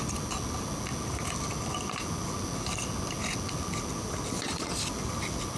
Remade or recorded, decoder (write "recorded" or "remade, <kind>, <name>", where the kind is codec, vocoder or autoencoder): recorded